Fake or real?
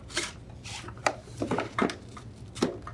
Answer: real